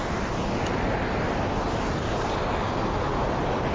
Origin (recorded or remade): recorded